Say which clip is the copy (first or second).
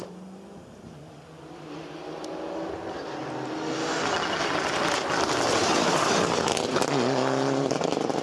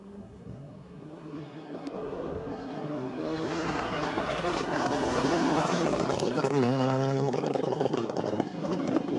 second